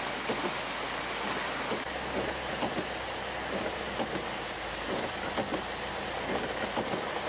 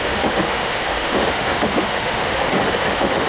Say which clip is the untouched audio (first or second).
first